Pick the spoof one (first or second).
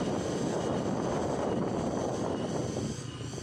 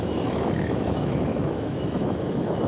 second